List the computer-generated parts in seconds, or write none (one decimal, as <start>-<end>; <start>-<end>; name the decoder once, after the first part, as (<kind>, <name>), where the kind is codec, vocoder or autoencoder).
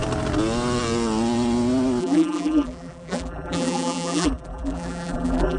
2.0-5.6 (vocoder, BigVGAN v2)